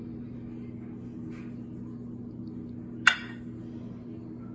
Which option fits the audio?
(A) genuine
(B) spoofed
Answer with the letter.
A